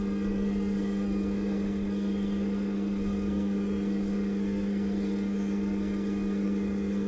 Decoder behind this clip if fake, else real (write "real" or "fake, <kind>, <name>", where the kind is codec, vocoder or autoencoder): fake, codec, SNAC